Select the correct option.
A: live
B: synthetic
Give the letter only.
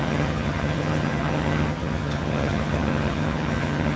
B